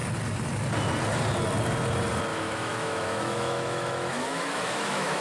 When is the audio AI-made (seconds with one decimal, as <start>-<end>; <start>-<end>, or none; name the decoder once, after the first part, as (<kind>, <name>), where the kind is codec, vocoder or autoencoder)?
2.3-5.2 (autoencoder, DAC-VAE)